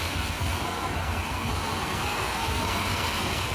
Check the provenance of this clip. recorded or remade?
remade